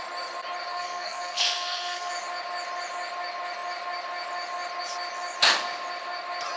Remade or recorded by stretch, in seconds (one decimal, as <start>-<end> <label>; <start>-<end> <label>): 0.0-0.7 recorded; 0.7-2.1 remade; 2.1-6.6 recorded